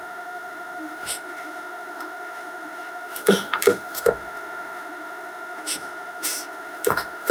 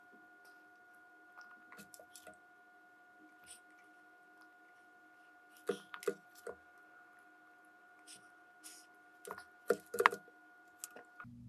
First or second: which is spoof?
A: first